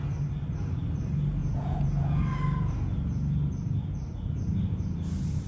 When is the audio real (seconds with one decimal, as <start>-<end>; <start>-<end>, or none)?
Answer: 0.0-1.4; 2.2-5.5